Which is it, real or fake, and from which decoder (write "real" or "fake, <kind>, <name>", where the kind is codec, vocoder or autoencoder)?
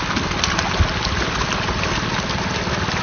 real